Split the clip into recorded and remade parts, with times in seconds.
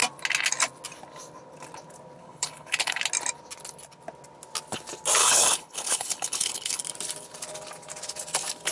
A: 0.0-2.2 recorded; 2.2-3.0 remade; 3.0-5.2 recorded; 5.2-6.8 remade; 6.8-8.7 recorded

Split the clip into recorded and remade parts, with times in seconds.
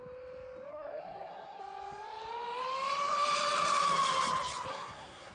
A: 0.0-0.7 recorded; 0.7-1.6 remade; 1.6-4.7 recorded; 4.7-5.3 remade